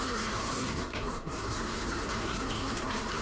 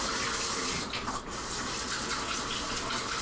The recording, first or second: second